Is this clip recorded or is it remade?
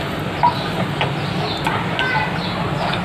recorded